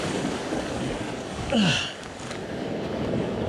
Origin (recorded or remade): remade